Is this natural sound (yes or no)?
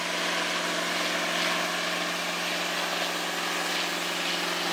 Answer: yes